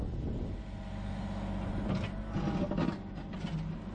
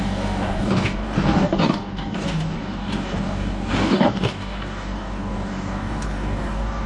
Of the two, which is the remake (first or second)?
second